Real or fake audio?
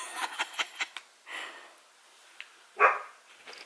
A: real